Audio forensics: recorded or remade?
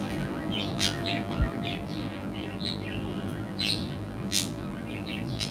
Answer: remade